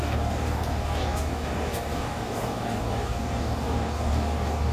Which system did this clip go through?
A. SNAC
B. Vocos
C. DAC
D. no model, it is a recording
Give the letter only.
C